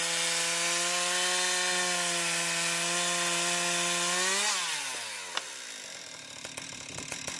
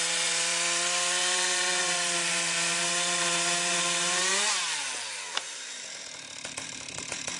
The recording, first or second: first